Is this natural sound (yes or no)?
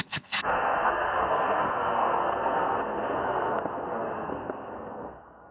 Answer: no